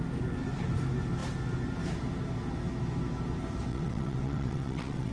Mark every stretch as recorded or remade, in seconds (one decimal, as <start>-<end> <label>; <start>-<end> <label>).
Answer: 0.0-3.7 recorded; 3.7-5.1 remade